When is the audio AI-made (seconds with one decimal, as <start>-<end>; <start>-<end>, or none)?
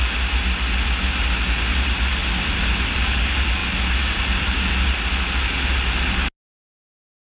none